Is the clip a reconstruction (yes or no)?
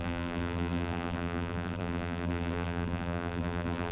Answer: yes